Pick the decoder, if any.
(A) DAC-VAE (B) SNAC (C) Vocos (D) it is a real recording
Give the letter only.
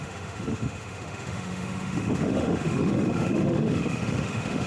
A